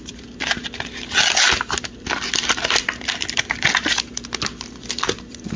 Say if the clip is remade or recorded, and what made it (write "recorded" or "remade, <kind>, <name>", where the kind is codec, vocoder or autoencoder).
recorded